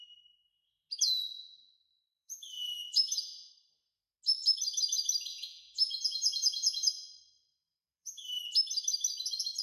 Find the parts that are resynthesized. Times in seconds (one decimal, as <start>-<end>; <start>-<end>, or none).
1.9-3.5; 5.3-7.1; 7.7-8.4

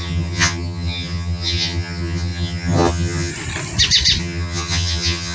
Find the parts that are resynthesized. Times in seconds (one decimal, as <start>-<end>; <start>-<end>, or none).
0.0-3.3; 4.2-5.3

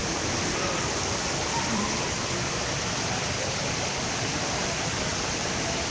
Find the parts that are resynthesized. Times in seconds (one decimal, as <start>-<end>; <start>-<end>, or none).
3.5-5.9

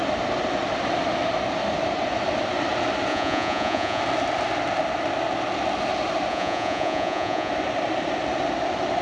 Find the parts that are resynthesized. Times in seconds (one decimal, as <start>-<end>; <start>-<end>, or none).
3.1-4.0; 6.3-7.5

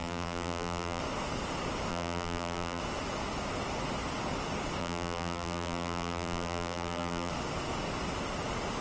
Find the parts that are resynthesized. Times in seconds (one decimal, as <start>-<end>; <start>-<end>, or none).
0.0-1.0; 1.9-2.8; 4.8-7.3

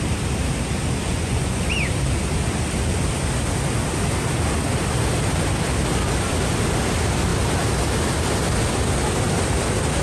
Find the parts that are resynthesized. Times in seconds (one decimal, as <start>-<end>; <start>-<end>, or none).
1.1-1.6